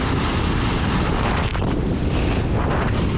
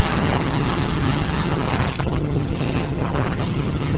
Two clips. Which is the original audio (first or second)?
first